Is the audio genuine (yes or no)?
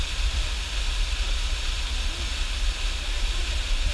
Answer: yes